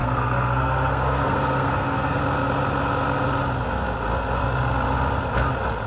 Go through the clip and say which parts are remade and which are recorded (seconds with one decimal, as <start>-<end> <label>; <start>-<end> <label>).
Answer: 0.0-2.2 remade; 2.2-5.9 recorded